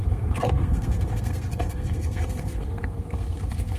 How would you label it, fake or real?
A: fake